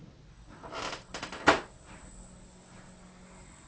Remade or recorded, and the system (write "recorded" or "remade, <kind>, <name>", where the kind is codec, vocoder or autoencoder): recorded